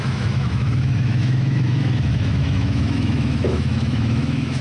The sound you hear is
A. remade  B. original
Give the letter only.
A